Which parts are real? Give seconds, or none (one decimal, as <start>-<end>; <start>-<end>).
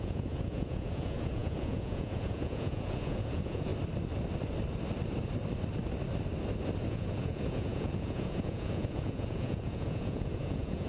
3.7-6.9